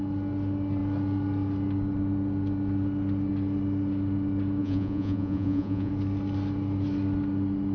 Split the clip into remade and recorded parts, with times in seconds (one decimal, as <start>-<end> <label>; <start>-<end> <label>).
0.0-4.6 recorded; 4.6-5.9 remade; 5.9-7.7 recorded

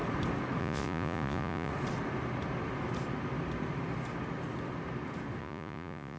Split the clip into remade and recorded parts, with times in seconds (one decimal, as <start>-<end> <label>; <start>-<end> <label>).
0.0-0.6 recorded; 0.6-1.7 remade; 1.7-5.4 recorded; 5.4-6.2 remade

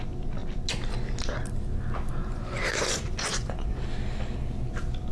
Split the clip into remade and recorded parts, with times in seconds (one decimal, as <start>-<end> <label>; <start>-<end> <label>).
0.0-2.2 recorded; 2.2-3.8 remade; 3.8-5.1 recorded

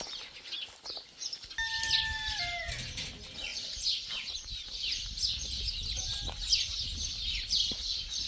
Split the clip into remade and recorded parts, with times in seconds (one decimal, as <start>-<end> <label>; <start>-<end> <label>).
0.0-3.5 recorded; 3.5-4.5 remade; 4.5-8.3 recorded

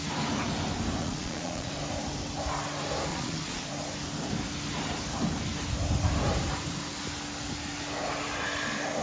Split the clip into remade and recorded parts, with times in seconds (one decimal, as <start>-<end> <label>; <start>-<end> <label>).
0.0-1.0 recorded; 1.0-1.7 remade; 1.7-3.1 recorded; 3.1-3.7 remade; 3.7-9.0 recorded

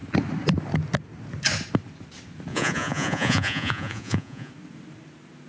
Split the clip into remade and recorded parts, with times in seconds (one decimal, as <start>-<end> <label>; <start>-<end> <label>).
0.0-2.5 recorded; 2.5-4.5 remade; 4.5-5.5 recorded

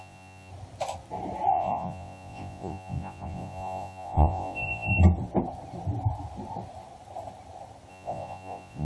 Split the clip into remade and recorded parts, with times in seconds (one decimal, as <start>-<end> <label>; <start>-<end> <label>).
0.0-0.5 remade; 0.5-1.5 recorded; 1.5-4.9 remade; 4.9-7.9 recorded; 7.9-8.8 remade

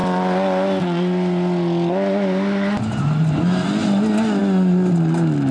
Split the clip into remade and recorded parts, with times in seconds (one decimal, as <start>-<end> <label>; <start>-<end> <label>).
0.0-5.5 recorded